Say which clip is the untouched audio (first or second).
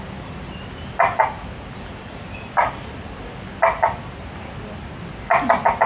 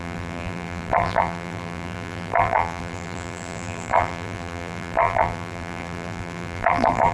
first